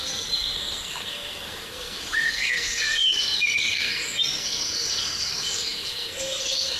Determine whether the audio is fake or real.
fake